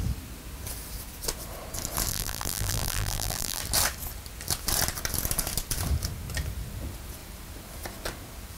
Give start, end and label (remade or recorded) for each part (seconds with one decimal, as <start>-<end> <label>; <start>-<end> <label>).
0.0-2.1 recorded; 2.1-3.6 remade; 3.6-8.6 recorded